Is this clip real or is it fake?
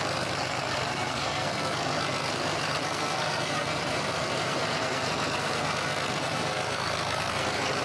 fake